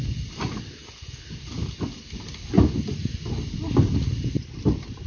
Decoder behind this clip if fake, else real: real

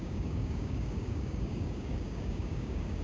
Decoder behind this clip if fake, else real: fake, codec, DAC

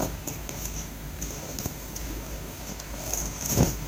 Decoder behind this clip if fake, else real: fake, codec, DAC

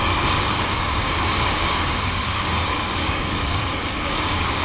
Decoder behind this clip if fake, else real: fake, codec, DAC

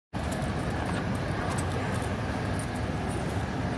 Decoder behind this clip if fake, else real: real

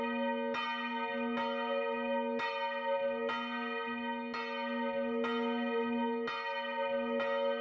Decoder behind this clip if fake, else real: real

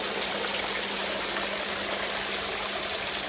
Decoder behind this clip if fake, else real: real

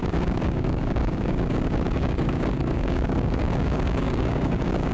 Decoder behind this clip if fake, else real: fake, codec, DAC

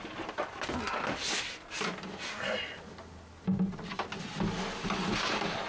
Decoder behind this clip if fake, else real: real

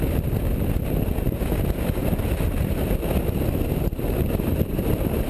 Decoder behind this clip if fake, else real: real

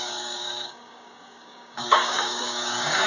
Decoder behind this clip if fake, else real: fake, codec, DAC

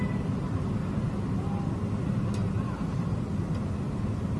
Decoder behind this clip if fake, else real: real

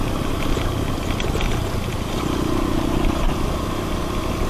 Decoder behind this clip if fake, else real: real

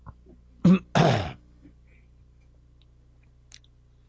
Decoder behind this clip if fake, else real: real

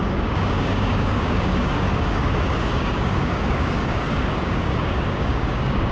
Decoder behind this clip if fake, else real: fake, codec, DAC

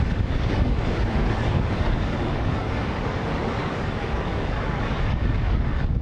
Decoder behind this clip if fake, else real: fake, codec, DAC